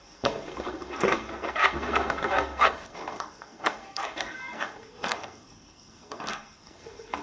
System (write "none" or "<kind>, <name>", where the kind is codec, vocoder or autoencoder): codec, SNAC